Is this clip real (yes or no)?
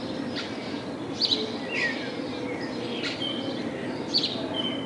yes